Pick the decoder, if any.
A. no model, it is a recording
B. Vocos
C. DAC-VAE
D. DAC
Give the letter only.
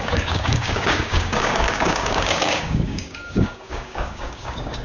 D